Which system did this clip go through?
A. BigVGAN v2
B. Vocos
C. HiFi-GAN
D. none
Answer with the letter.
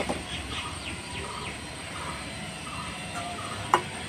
A